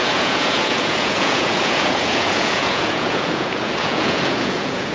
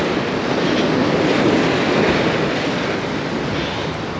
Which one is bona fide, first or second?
second